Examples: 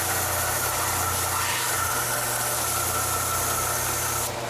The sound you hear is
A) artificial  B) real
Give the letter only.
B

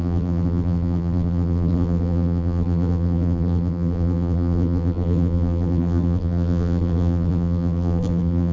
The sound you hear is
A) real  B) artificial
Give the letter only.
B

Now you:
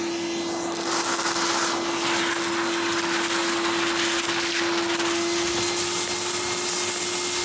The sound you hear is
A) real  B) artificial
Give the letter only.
A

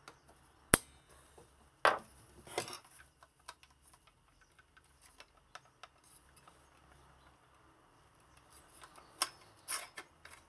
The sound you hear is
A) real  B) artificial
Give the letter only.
A